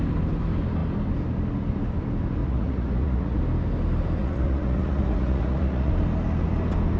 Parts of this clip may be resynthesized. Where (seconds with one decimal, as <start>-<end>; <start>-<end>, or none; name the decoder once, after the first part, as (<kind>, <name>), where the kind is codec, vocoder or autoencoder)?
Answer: 2.4-3.4 (vocoder, Vocos); 4.2-5.9